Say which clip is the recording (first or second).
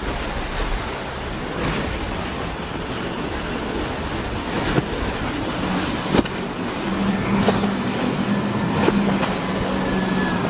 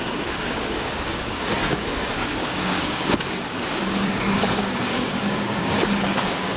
first